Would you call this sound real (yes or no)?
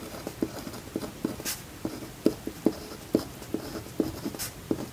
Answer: yes